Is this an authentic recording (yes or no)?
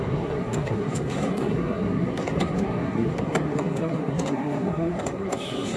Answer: no